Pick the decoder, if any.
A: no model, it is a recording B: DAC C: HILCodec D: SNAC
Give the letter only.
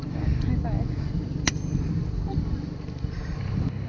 A